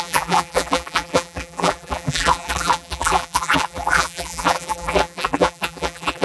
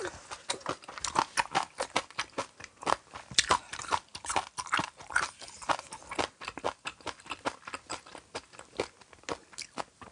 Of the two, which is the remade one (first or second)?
first